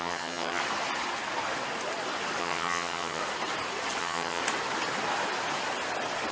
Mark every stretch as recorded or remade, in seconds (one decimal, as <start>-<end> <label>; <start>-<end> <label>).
0.0-0.6 remade; 0.6-2.4 recorded; 2.4-3.2 remade; 3.2-4.0 recorded; 4.0-4.4 remade; 4.4-6.3 recorded